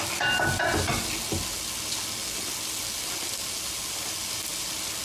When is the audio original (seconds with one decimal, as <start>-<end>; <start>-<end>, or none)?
0.0-5.0